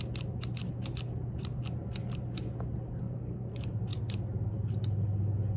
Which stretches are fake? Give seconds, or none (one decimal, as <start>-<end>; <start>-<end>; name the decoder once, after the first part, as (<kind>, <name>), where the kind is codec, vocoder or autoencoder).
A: 3.0-3.5 (codec, SNAC)